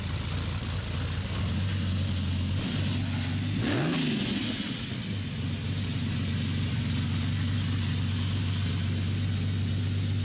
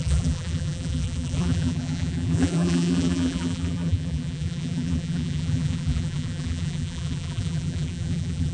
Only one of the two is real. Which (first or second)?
first